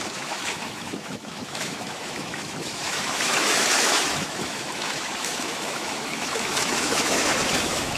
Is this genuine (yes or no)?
no